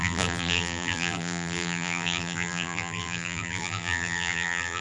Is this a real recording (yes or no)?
no